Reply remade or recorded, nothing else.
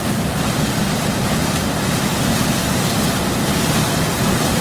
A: remade